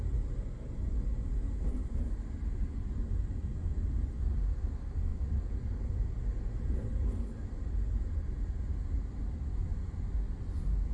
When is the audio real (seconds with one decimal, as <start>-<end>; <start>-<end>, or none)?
0.0-10.9